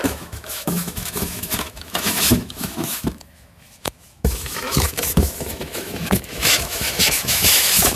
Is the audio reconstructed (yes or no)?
yes